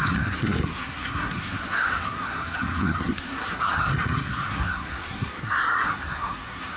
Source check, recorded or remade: remade